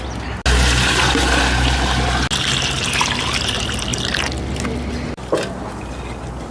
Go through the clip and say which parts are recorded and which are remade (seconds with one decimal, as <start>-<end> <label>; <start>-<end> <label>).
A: 0.0-6.5 recorded